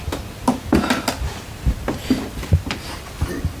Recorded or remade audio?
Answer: recorded